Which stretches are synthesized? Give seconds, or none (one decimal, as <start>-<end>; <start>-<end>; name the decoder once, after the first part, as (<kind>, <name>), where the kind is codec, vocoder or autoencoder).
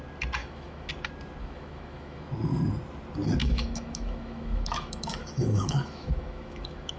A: 0.4-0.9 (autoencoder, DAC-VAE); 1.4-2.3; 3.4-7.0